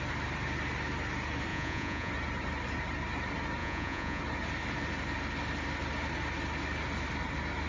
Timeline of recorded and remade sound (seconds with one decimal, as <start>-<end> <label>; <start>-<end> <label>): 0.0-1.5 recorded; 1.5-2.1 remade; 2.1-3.6 recorded; 3.6-4.2 remade; 4.2-7.7 recorded